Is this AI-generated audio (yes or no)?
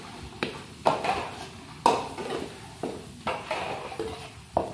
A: no